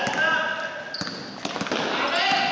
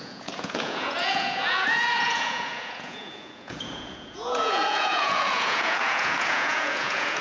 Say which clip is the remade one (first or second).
second